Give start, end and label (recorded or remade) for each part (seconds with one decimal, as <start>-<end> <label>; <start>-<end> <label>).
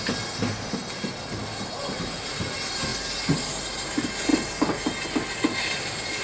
0.0-6.2 recorded